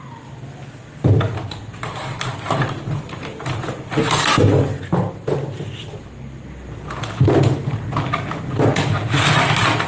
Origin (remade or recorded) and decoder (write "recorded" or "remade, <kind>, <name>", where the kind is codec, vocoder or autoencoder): recorded